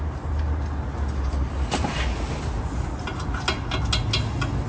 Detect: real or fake real